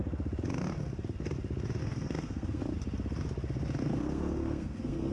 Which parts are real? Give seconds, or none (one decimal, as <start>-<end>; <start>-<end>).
0.0-1.8; 2.6-3.8